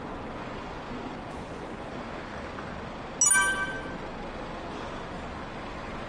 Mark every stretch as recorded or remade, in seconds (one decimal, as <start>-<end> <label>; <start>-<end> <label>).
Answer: 0.0-1.9 remade; 1.9-5.6 recorded; 5.6-6.1 remade